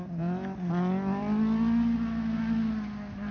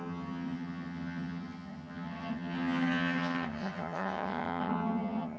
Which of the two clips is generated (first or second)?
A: second